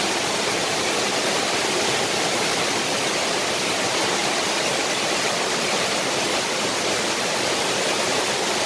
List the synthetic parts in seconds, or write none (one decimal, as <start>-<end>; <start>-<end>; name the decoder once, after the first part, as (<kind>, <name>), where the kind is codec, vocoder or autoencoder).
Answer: 0.0-4.2 (vocoder, BigVGAN v2); 4.8-8.7